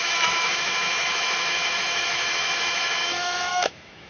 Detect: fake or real fake